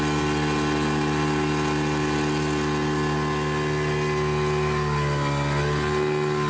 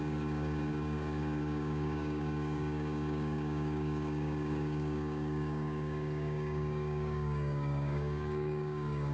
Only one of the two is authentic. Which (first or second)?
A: first